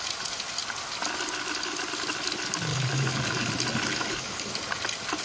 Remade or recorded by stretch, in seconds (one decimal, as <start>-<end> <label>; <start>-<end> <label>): 0.0-2.7 recorded; 2.7-3.5 remade; 3.5-3.9 recorded; 3.9-4.5 remade; 4.5-5.2 recorded